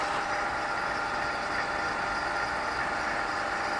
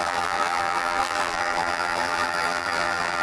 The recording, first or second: first